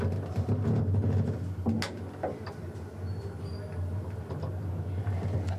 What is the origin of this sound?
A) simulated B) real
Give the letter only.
B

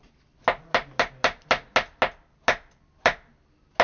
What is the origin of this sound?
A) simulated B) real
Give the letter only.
B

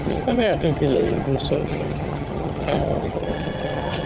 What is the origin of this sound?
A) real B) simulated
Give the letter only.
B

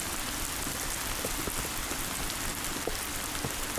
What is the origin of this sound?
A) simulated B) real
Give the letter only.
B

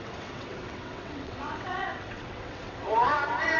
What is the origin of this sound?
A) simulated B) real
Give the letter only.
A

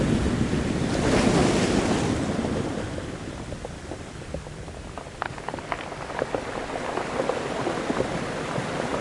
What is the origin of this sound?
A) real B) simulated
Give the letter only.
A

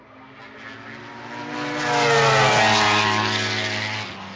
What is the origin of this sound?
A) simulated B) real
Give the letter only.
B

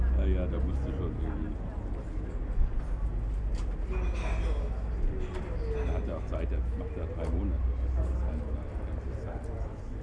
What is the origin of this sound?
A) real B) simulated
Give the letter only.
A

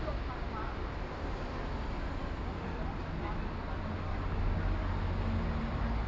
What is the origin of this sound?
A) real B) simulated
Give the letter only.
A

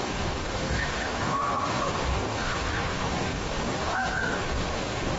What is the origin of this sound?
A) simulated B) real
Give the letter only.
A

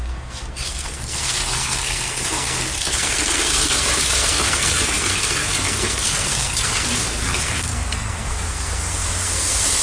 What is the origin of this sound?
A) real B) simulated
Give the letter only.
B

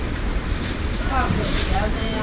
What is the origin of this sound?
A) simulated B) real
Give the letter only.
A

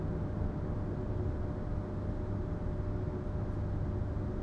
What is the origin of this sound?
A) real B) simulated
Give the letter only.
A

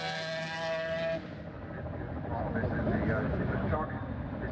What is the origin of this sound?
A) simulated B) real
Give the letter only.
B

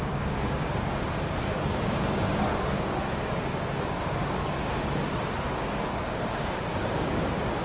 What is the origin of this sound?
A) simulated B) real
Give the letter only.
A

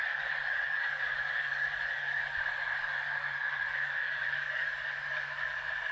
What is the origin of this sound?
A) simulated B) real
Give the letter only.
A